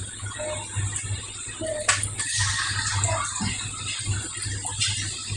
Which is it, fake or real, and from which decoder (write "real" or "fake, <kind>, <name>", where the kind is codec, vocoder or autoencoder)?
real